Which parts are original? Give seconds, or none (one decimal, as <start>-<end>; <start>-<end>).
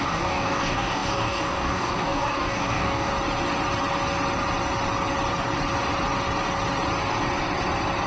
3.1-8.1